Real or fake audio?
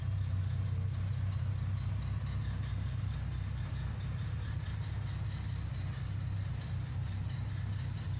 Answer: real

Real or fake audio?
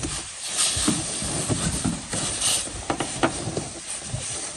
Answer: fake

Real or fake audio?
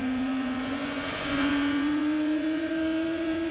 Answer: fake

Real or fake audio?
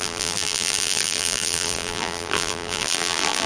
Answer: fake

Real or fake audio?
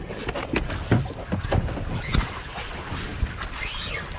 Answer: real